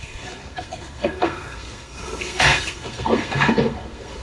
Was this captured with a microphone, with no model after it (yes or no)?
no